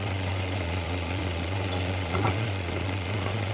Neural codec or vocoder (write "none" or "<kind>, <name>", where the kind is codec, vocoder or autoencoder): vocoder, Vocos